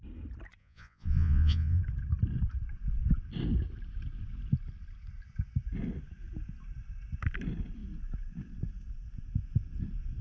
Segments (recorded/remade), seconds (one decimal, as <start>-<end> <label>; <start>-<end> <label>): 0.0-0.6 recorded; 0.6-1.8 remade; 1.8-10.2 recorded